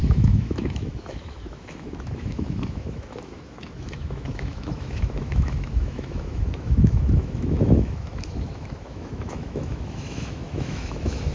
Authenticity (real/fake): fake